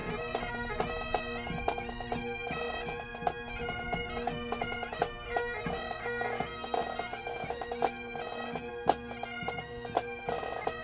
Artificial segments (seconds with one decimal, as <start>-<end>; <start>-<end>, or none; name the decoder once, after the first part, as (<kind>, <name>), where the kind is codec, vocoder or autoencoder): none